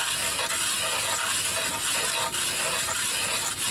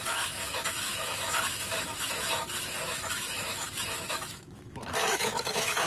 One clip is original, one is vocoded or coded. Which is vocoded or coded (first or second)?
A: second